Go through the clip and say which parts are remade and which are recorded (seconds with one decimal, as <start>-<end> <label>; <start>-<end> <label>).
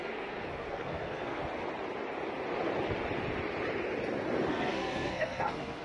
0.0-1.4 remade; 1.4-4.5 recorded; 4.5-5.8 remade